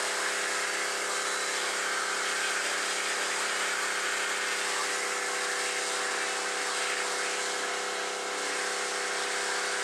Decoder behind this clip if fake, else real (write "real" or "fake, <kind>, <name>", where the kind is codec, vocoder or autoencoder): real